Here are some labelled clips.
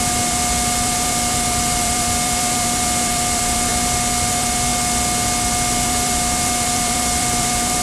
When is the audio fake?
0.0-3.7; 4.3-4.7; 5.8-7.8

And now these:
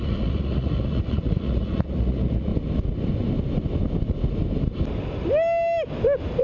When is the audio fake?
0.0-2.5

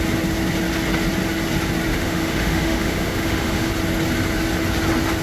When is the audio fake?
1.9-3.7

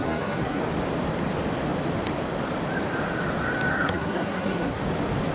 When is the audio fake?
0.0-0.6; 3.7-4.8